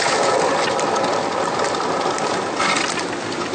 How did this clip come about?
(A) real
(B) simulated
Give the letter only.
A